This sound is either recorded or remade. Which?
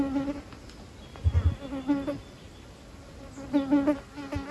recorded